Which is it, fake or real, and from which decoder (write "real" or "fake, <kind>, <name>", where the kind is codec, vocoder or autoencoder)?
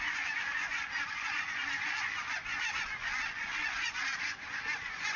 fake, vocoder, Vocos